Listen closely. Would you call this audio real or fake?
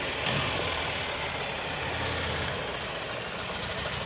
real